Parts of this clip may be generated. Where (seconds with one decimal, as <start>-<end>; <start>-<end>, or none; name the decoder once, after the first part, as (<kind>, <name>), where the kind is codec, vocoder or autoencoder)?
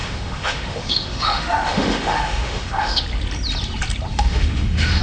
0.0-3.0 (autoencoder, DAC-VAE); 4.1-5.0